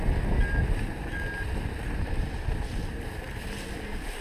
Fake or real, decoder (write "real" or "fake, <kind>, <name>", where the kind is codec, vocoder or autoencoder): real